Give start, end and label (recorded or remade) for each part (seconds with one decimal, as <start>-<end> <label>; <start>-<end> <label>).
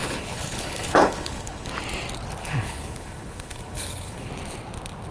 0.0-1.7 remade; 1.7-2.4 recorded; 2.4-4.3 remade; 4.3-5.1 recorded